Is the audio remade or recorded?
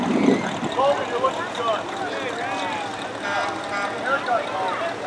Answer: recorded